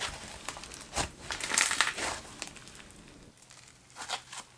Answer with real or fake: fake